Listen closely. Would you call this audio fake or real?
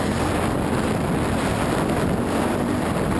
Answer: real